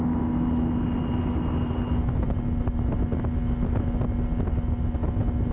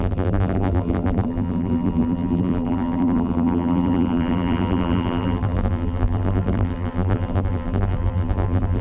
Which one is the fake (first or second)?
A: second